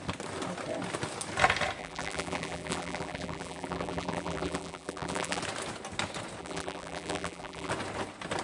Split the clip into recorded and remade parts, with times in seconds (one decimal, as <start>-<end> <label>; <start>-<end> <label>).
0.0-1.8 recorded; 1.8-5.4 remade; 5.4-6.4 recorded; 6.4-7.7 remade; 7.7-8.4 recorded